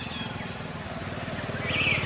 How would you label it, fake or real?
real